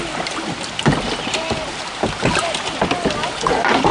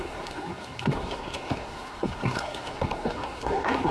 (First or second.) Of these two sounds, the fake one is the second